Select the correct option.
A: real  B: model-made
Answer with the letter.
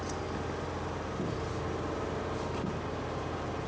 A